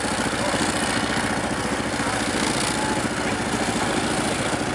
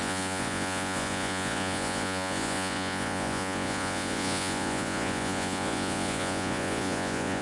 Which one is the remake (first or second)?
second